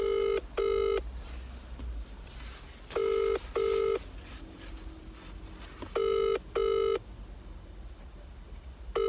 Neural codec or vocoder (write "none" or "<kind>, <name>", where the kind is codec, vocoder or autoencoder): none